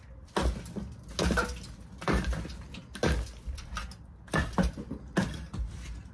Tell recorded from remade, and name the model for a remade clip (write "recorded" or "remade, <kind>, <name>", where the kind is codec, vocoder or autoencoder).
recorded